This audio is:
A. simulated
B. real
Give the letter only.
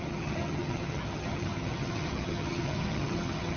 A